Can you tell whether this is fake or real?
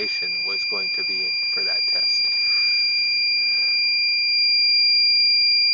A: real